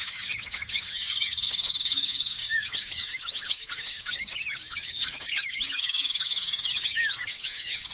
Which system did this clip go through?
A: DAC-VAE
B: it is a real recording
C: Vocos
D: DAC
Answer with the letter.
D